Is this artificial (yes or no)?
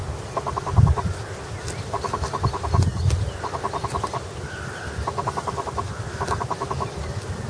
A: no